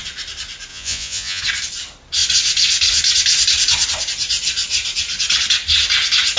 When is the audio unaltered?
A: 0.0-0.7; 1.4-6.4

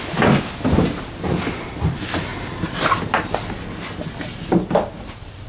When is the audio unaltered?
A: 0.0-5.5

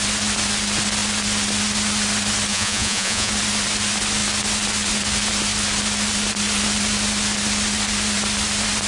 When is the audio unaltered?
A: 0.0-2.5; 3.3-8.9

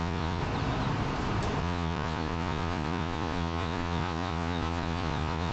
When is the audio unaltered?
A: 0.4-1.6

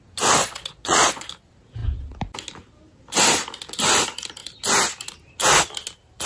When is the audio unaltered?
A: 0.0-0.4; 1.3-6.3